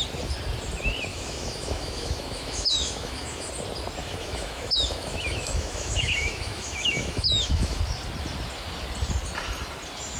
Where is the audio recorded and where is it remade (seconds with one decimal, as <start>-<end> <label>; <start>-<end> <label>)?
0.0-1.1 recorded; 1.1-3.5 remade; 3.5-4.0 recorded; 4.0-7.8 remade; 7.8-10.2 recorded